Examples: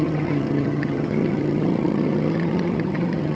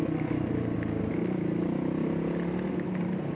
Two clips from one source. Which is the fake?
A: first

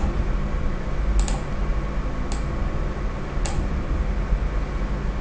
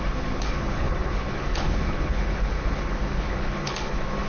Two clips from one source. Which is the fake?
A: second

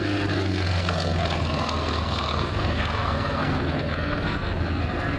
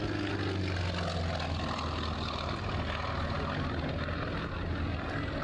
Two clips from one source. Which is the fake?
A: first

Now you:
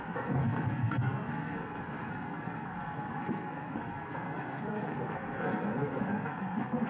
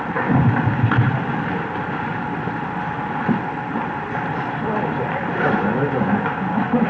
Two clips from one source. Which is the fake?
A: first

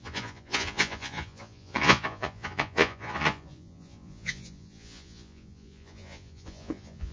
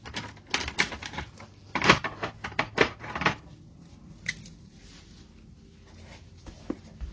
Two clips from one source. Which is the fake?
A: first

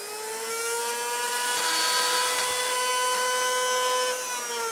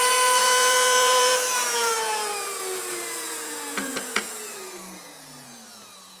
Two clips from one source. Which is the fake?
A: second